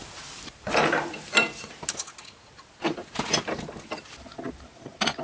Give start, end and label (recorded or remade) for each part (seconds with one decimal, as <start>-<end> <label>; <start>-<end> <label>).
0.0-0.7 remade; 0.7-5.2 recorded